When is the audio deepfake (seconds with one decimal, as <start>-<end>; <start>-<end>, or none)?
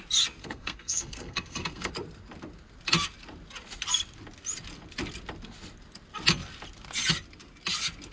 0.4-1.9